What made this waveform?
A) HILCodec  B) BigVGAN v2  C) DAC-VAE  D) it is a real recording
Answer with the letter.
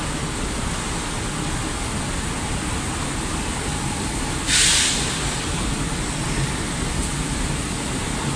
D